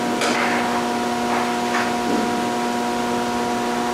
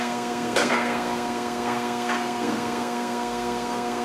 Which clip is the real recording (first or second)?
first